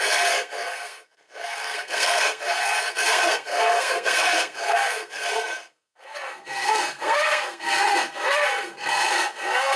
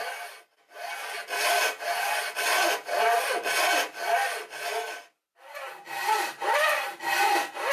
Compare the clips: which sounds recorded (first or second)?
second